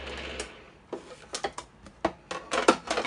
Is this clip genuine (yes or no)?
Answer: yes